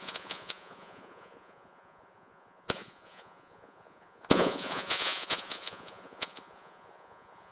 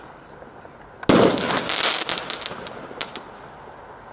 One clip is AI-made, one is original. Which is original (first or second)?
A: second